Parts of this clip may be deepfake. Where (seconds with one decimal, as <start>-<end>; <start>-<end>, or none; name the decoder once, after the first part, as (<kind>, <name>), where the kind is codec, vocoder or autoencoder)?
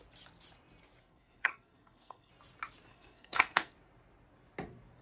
1.0-2.3 (codec, SNAC); 2.9-3.7